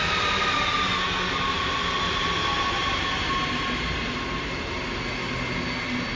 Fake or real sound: real